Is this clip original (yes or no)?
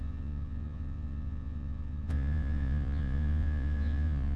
no